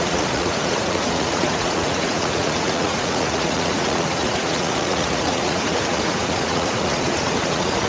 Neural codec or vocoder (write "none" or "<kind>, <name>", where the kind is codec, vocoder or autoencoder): vocoder, Vocos